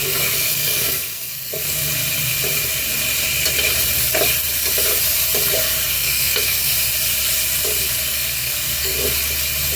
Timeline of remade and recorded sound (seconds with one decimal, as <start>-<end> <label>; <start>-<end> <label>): 0.0-1.8 remade; 1.8-5.9 recorded; 5.9-6.7 remade; 6.7-8.1 recorded; 8.1-8.9 remade; 8.9-9.8 recorded